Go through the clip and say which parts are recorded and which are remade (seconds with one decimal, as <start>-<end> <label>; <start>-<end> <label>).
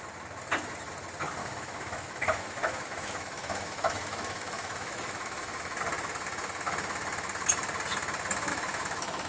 0.0-1.4 recorded; 1.4-5.8 remade; 5.8-8.5 recorded; 8.5-9.3 remade